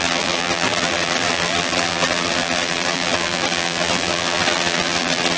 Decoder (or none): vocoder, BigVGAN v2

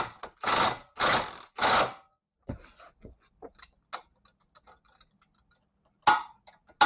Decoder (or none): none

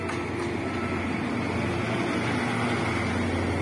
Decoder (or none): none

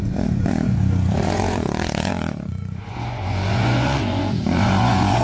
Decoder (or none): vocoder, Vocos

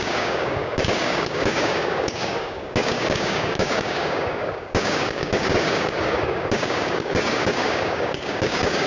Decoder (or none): codec, DAC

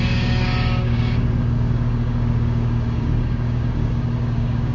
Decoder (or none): codec, DAC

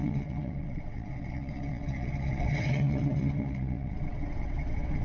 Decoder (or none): vocoder, WaveNeXt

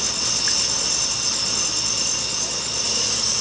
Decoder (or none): none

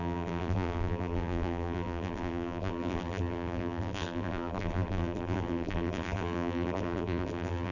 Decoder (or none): vocoder, BigVGAN v2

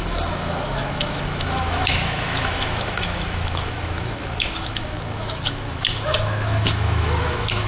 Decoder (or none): autoencoder, DAC-VAE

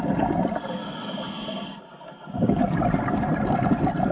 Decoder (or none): none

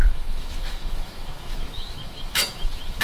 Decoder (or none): autoencoder, DAC-VAE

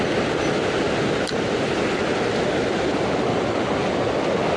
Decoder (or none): none